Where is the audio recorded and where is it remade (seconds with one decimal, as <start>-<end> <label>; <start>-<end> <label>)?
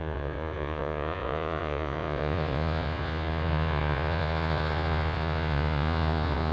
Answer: 0.0-6.5 remade